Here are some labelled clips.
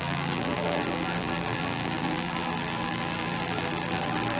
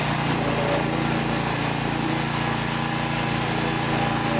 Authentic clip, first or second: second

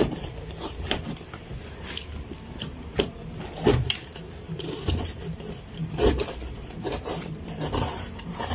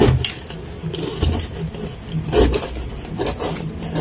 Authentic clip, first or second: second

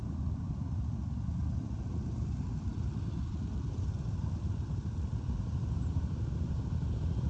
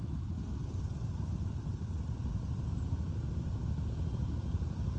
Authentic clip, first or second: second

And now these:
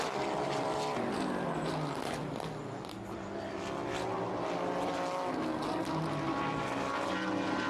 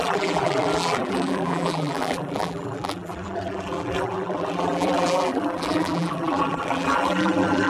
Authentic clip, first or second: first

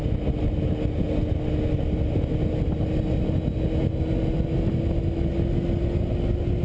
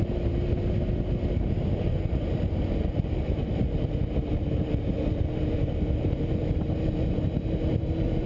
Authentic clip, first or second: first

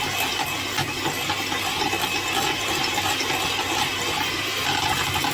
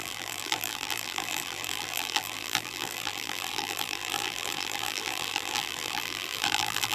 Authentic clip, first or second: first